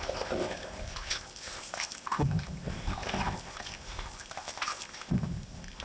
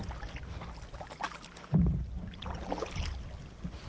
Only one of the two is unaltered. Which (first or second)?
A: second